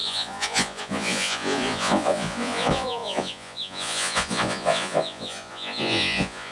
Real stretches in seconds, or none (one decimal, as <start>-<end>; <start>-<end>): none